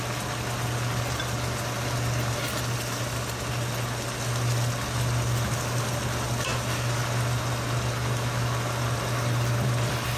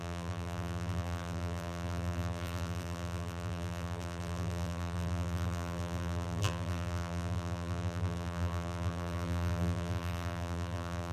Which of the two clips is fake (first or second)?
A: second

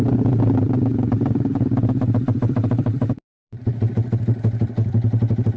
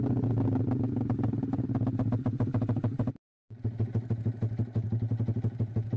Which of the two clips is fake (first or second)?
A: first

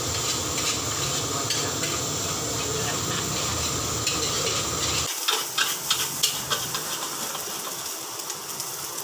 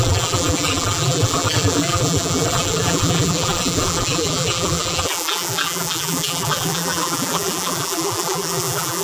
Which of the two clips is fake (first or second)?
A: second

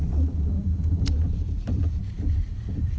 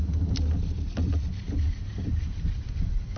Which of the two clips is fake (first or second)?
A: first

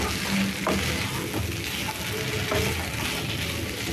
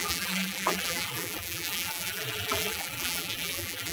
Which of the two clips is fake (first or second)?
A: second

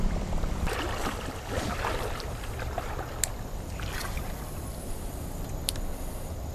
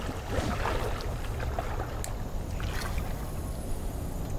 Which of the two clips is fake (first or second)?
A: first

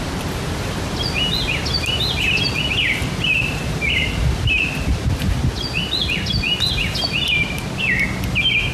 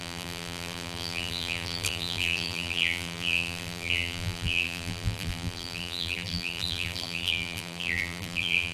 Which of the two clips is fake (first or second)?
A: second